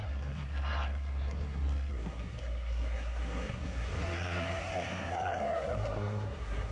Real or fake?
fake